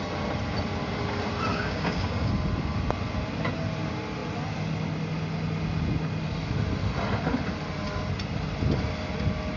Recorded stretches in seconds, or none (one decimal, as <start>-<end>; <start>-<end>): 0.0-1.5; 2.3-9.6